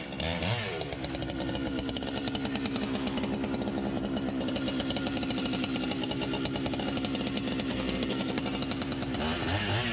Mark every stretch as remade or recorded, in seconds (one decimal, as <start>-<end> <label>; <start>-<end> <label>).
0.0-7.7 recorded; 7.7-8.4 remade; 8.4-9.9 recorded